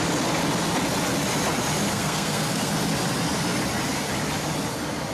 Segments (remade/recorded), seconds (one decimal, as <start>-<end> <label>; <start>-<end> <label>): 0.0-1.9 recorded; 1.9-2.7 remade; 2.7-5.1 recorded